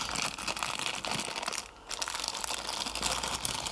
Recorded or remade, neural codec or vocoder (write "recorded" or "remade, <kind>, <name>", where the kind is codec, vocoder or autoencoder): recorded